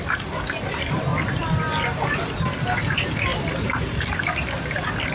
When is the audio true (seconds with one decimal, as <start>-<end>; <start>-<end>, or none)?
0.0-5.1

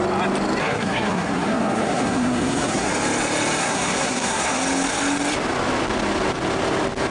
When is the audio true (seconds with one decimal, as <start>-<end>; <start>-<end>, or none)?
0.0-0.6; 2.9-3.6; 4.6-7.1

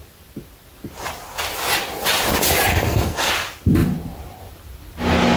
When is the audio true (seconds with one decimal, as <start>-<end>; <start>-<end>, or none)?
0.0-2.7; 3.3-5.4

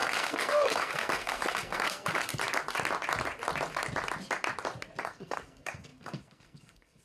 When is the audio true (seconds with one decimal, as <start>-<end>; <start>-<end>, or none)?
2.3-5.0

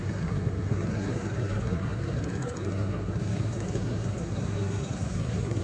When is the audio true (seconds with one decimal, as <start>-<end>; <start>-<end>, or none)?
none

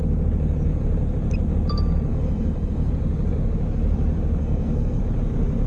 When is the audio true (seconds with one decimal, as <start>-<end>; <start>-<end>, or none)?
0.0-2.1; 2.9-4.4; 5.0-5.7